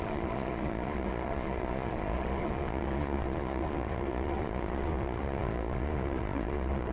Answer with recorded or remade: remade